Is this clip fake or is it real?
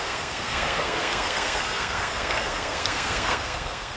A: fake